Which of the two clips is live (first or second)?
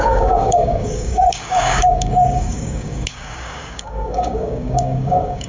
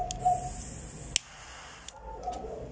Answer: second